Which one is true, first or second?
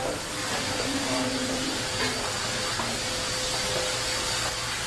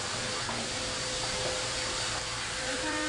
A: first